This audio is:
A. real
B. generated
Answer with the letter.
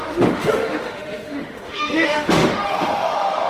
B